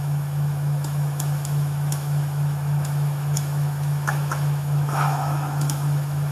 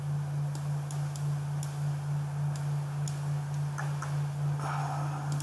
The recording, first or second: second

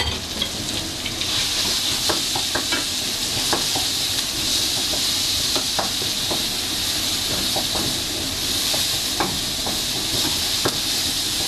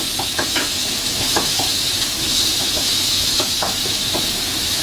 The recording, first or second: first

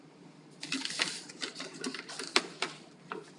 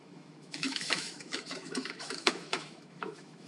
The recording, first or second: first